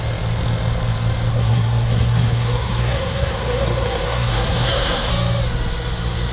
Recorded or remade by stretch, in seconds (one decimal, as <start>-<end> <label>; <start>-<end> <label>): 0.0-1.3 recorded; 1.3-5.1 remade; 5.1-6.3 recorded